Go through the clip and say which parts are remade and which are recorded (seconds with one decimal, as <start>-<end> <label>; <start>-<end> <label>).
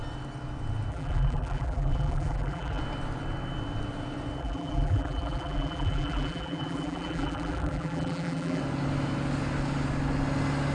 0.0-0.9 recorded; 0.9-2.8 remade; 2.8-4.4 recorded; 4.4-8.6 remade; 8.6-10.7 recorded